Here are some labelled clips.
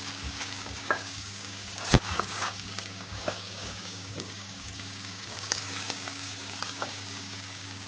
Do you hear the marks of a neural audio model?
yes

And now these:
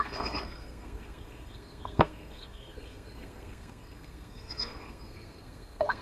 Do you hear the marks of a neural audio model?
yes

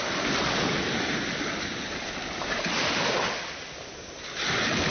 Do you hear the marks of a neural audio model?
no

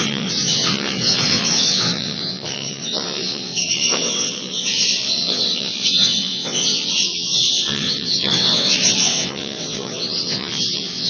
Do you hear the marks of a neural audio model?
yes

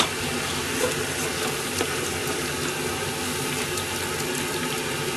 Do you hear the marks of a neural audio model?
no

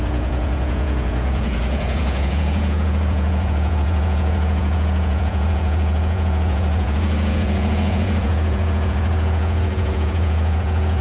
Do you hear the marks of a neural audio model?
yes